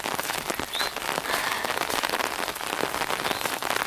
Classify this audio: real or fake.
real